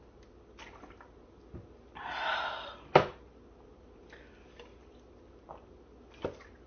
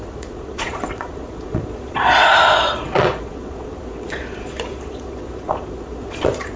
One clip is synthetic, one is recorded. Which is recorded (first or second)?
first